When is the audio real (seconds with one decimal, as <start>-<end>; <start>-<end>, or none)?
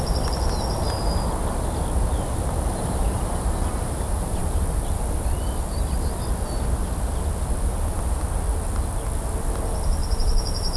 0.0-2.7; 4.6-10.0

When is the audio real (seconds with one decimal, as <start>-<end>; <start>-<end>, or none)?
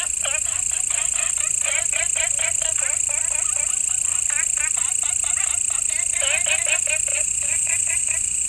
0.0-7.1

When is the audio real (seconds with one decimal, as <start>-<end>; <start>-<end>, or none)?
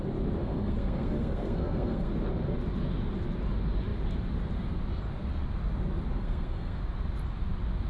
0.0-0.4; 2.1-6.2; 6.8-7.9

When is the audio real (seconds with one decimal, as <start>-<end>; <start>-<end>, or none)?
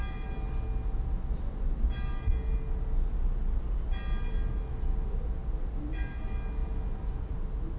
0.0-7.8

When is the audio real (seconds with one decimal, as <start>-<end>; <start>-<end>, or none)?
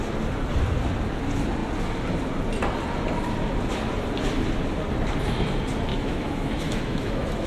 0.0-5.9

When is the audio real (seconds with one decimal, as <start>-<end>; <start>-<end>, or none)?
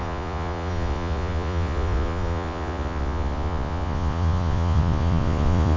none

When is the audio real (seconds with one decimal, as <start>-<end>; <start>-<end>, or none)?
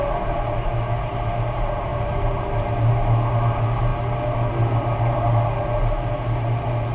0.0-6.9